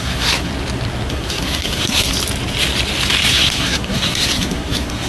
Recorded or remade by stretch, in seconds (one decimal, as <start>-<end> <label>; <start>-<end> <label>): 0.0-0.5 remade; 0.5-1.1 recorded; 1.1-2.1 remade; 2.1-3.3 recorded; 3.3-5.1 remade